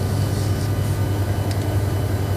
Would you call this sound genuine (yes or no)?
yes